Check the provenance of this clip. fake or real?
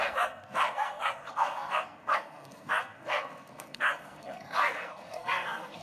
fake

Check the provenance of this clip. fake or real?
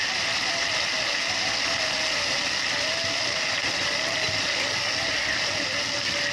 real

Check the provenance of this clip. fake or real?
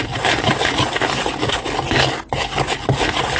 real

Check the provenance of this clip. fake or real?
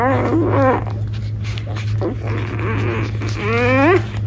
real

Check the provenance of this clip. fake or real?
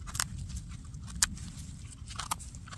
real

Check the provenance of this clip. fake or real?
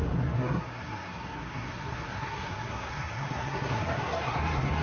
fake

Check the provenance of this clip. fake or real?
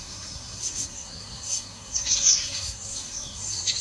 fake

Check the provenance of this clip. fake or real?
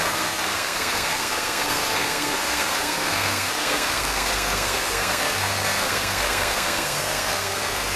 fake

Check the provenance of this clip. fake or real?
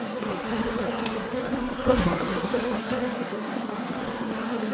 fake